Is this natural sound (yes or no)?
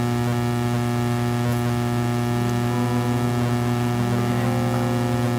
yes